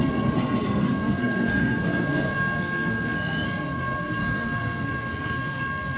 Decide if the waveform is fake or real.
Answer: fake